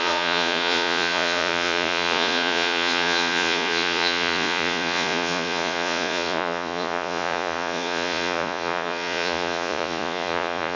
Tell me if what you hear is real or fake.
fake